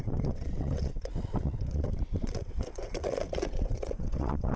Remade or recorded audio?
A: remade